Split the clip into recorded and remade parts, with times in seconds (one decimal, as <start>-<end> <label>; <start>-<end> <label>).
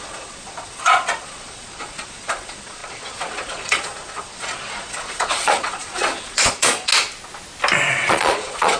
0.0-6.9 remade; 6.9-7.9 recorded; 7.9-8.8 remade